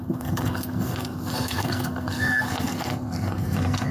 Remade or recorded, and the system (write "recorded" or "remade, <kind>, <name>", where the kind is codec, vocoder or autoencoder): remade, codec, SNAC